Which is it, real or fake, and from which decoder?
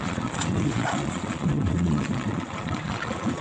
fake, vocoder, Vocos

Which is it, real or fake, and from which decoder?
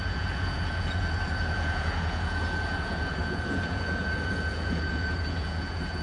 fake, vocoder, Vocos